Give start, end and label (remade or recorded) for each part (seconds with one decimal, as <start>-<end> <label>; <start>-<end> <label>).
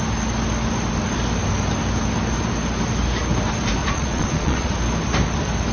0.0-3.8 recorded; 3.8-4.7 remade; 4.7-5.7 recorded